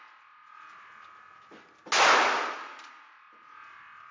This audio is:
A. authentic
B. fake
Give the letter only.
A